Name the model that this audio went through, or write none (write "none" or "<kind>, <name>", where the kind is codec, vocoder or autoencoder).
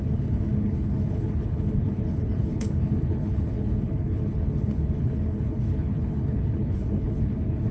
codec, HILCodec